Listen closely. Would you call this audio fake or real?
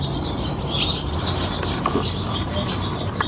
real